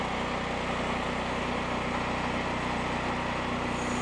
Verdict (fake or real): real